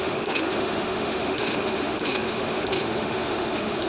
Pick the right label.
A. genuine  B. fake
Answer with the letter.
B